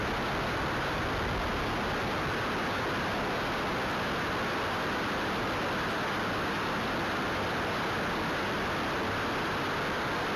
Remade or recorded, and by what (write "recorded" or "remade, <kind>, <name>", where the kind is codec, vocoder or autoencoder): recorded